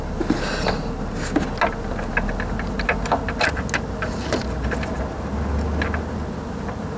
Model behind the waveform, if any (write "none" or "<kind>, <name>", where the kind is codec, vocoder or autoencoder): none